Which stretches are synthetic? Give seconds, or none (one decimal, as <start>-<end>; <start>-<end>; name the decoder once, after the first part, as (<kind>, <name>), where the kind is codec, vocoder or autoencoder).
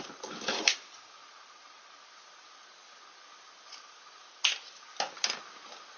1.2-2.2 (vocoder, BigVGAN v2)